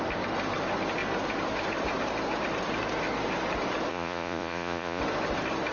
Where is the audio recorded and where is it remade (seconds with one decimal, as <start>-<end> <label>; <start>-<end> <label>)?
0.0-3.9 recorded; 3.9-5.0 remade; 5.0-5.7 recorded